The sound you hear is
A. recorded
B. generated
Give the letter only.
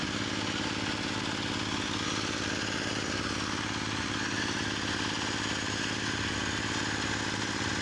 A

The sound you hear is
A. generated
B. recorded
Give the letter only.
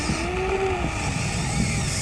B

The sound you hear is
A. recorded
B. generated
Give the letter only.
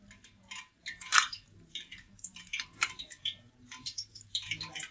B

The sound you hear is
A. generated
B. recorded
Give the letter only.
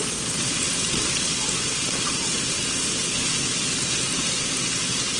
B